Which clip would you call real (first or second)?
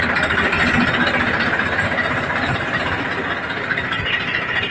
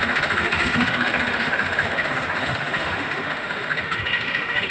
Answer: first